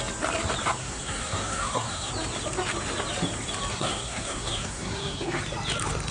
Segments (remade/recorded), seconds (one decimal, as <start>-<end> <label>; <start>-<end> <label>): 0.0-0.8 recorded; 0.8-2.1 remade; 2.1-3.7 recorded; 3.7-5.4 remade; 5.4-6.1 recorded